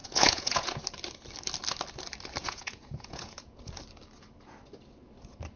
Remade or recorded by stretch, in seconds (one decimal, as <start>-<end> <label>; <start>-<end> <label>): 0.0-0.8 remade; 0.8-2.4 recorded; 2.4-3.7 remade; 3.7-5.6 recorded